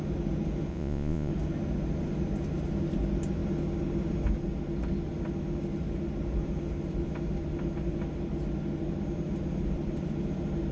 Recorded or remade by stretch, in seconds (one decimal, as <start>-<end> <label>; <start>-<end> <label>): 0.0-0.7 recorded; 0.7-1.3 remade; 1.3-10.7 recorded